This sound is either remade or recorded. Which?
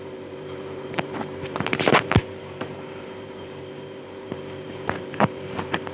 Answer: remade